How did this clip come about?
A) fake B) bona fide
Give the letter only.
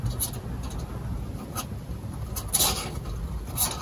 B